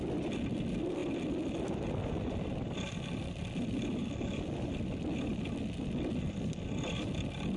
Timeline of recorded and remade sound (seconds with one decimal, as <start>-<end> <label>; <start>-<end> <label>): 0.0-7.6 recorded